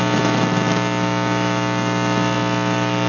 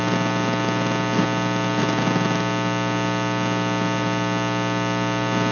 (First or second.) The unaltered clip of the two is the second